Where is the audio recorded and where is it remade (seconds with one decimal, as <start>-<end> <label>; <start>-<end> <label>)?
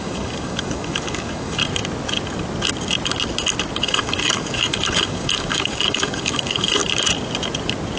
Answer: 0.0-1.6 remade; 1.6-3.8 recorded; 3.8-6.8 remade; 6.8-8.0 recorded